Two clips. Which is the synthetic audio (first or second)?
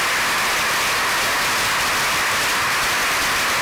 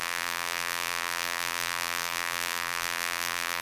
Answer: second